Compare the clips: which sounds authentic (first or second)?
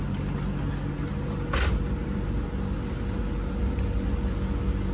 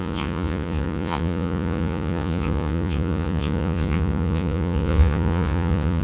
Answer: first